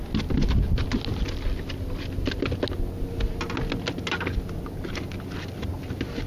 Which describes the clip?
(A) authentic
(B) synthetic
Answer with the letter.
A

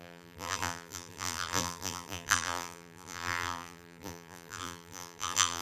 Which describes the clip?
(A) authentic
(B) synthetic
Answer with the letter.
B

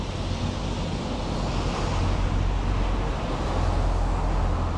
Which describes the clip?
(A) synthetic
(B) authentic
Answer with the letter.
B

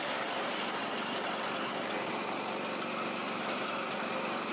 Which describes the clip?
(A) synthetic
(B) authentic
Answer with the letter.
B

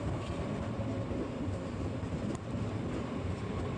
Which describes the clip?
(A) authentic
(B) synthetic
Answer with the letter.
A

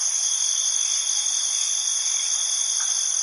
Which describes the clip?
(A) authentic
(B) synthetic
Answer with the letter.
A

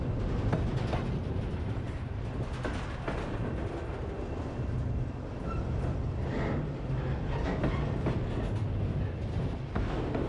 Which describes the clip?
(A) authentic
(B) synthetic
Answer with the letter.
A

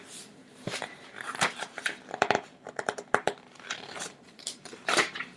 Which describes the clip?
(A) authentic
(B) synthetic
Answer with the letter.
B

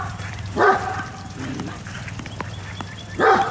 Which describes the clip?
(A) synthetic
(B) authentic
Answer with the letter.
A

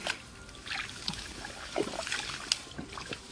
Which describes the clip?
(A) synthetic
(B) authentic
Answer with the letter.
B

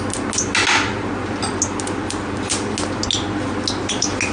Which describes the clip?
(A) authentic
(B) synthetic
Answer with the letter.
A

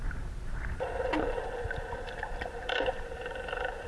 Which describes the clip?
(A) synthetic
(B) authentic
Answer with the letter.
A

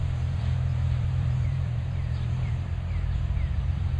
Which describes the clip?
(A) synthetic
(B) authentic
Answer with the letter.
A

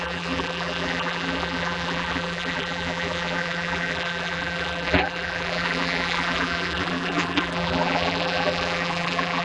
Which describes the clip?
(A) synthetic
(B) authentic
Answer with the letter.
A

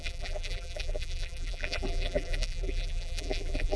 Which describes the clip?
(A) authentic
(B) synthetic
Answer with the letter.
B